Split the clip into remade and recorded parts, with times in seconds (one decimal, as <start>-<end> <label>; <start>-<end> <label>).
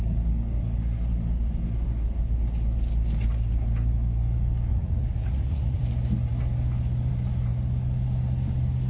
0.0-4.7 recorded; 4.7-5.8 remade; 5.8-8.9 recorded